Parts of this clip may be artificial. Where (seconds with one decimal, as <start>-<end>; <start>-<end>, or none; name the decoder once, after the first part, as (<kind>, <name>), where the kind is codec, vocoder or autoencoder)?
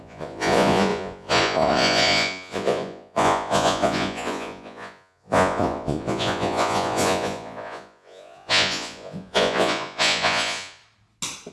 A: 0.0-10.8 (vocoder, Vocos)